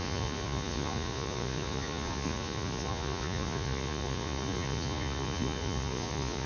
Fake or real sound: fake